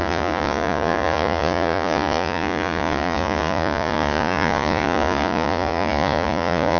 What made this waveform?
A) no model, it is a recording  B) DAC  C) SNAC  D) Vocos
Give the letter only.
D